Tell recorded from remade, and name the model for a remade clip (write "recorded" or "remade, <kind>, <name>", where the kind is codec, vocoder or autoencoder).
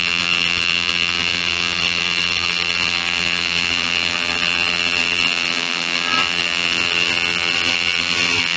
remade, vocoder, BigVGAN v2